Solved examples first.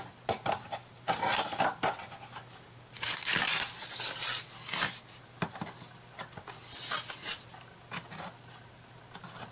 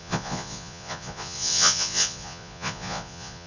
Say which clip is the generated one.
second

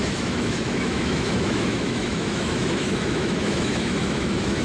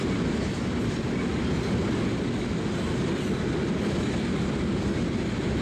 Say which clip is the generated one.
first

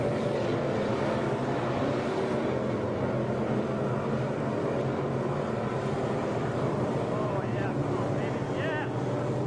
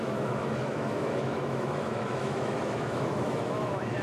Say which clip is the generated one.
second